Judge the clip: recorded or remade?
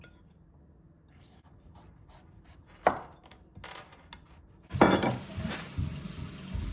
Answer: recorded